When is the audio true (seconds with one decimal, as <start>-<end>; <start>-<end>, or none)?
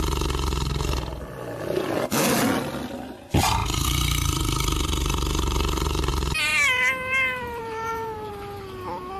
0.0-3.6; 6.1-6.5; 8.3-9.2